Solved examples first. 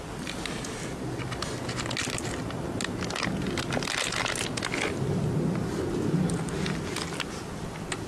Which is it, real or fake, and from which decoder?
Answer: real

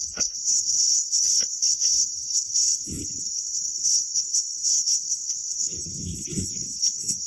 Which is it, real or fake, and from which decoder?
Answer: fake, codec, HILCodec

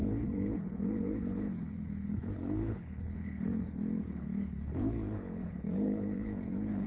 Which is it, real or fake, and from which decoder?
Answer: fake, codec, HILCodec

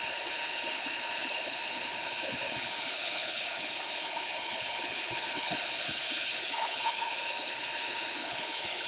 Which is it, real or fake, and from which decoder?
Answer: fake, codec, HILCodec